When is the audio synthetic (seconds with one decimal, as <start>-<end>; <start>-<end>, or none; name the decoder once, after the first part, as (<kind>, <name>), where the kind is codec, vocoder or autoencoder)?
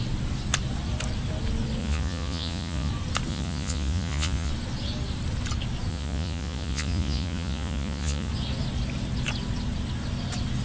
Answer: 1.8-2.9 (vocoder, Vocos); 3.3-4.5; 5.9-8.3